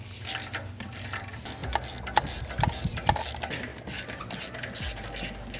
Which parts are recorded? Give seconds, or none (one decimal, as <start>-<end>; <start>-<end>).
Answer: 0.0-1.6; 3.3-3.7; 4.2-5.6